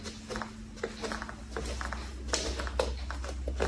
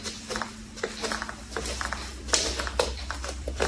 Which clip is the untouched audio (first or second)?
first